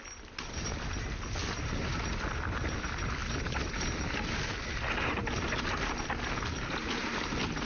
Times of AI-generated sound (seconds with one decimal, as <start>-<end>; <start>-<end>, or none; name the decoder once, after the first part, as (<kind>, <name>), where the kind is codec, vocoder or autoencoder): none